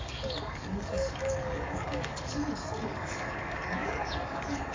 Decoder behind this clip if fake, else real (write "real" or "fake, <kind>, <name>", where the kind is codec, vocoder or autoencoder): fake, codec, DAC